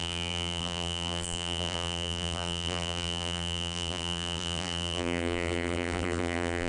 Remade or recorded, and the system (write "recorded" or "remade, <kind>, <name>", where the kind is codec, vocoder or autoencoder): remade, vocoder, BigVGAN v2